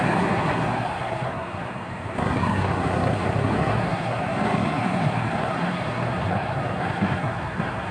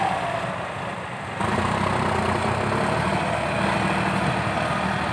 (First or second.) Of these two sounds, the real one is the second